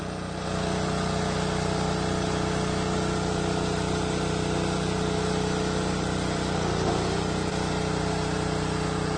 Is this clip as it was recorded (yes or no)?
yes